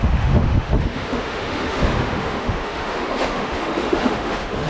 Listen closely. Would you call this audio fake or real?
fake